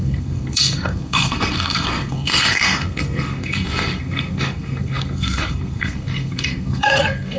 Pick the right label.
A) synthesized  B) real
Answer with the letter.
A